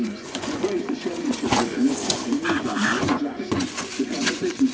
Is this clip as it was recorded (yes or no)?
no